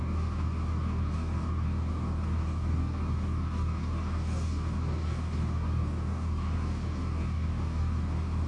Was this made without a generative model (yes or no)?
no